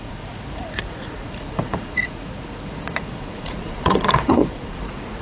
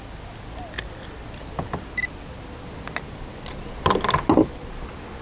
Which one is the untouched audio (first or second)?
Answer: second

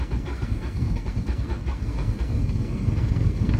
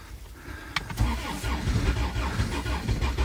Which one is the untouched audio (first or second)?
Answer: second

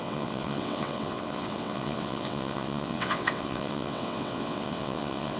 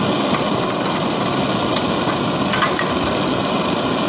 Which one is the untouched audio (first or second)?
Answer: second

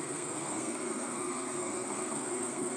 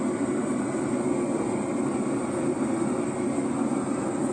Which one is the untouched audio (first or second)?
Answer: second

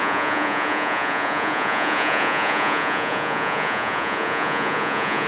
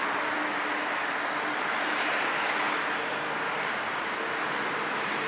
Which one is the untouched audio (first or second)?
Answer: second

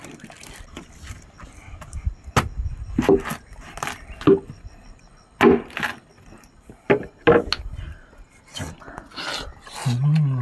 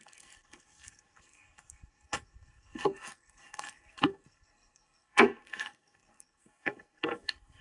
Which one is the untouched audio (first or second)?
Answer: first